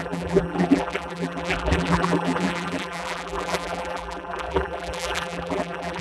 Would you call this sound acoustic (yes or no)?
no